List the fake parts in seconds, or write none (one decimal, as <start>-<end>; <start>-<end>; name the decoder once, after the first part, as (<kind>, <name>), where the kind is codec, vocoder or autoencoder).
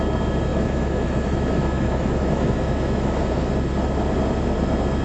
0.5-3.5 (autoencoder, DAC-VAE)